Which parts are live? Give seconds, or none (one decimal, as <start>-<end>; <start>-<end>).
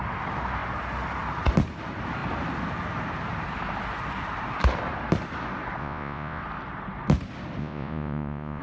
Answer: 0.0-5.8; 6.4-7.6